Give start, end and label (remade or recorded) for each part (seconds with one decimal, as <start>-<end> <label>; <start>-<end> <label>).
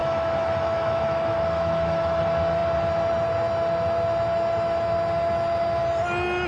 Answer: 0.0-2.2 remade; 2.2-6.5 recorded